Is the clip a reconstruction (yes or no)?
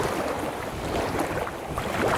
no